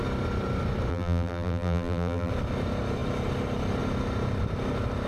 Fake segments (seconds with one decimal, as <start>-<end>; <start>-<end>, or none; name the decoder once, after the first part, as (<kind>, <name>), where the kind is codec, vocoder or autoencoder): 0.9-2.3 (vocoder, BigVGAN v2)